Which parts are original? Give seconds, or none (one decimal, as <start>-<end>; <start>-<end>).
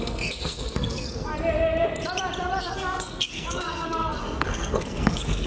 1.3-2.6